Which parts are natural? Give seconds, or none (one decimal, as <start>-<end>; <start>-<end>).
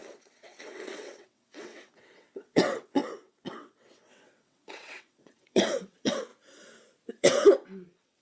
6.3-7.1